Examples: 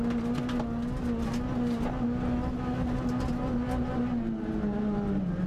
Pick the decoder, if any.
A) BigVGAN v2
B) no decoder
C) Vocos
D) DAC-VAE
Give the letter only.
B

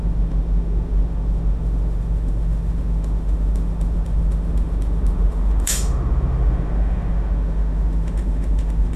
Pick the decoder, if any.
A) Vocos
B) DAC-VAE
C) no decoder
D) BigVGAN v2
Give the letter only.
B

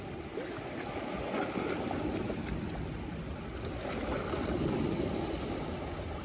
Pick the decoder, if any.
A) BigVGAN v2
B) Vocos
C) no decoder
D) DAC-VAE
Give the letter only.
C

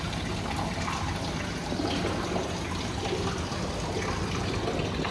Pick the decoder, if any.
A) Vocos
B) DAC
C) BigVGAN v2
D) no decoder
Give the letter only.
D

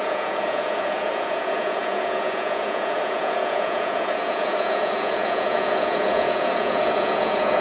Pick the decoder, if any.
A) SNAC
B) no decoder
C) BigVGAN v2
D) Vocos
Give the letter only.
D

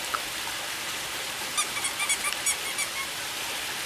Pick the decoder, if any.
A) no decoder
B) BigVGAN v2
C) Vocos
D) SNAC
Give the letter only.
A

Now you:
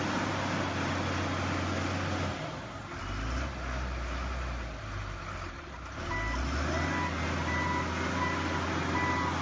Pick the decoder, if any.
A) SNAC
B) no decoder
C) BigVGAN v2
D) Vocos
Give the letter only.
B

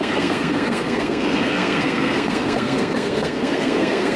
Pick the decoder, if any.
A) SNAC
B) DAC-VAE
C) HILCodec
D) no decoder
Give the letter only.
A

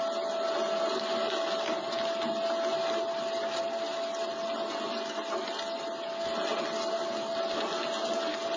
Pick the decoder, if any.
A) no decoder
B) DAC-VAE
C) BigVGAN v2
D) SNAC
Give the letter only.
A